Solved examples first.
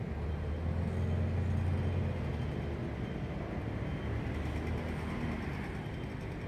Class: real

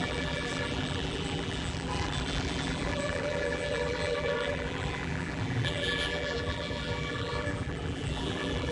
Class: fake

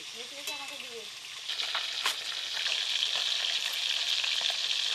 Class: real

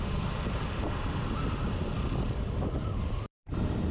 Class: fake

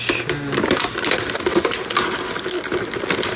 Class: real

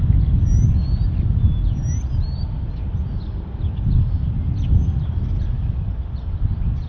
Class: real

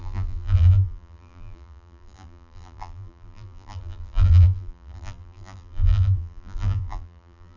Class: fake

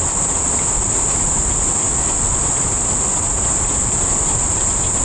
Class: real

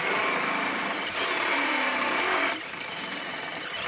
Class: fake